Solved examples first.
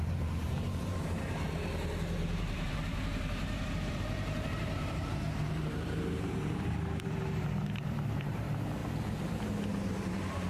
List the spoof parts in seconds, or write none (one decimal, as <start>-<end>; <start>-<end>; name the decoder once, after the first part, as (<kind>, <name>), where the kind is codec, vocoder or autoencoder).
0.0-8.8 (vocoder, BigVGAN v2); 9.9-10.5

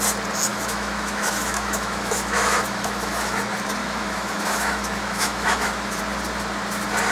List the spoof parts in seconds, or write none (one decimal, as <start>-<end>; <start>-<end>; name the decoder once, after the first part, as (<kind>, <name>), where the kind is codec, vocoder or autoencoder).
0.5-3.4 (autoencoder, DAC-VAE); 3.8-6.0

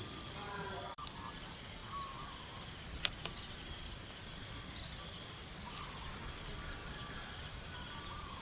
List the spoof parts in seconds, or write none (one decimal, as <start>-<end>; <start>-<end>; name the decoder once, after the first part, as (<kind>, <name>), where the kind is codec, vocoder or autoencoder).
1.8-5.0 (vocoder, BigVGAN v2)